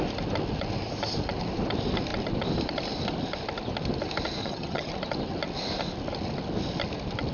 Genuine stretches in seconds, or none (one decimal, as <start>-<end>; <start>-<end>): 0.0-4.4; 4.9-7.3